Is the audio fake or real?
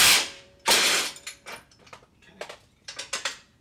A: fake